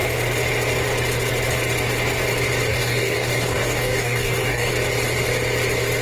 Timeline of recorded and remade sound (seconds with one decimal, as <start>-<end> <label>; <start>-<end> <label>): 0.0-2.7 recorded; 2.7-4.7 remade; 4.7-6.0 recorded